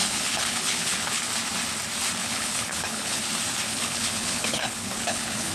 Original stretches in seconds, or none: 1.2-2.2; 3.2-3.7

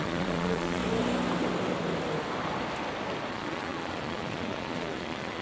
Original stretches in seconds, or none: 0.8-3.3

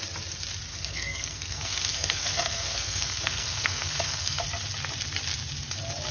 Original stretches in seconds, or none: 0.0-0.7; 4.4-6.1

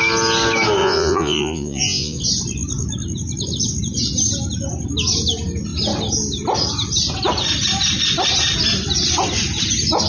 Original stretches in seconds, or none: 0.0-0.8; 2.2-10.1